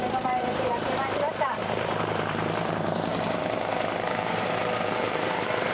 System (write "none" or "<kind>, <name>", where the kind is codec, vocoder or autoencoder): vocoder, BigVGAN v2